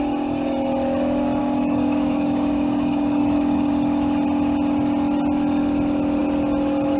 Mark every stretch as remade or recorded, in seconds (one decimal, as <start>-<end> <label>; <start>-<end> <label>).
0.0-1.4 recorded; 1.4-3.7 remade; 3.7-7.0 recorded